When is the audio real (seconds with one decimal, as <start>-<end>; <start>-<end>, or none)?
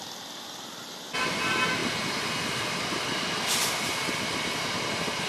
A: 0.0-5.3